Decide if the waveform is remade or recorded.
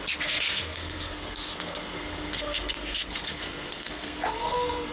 remade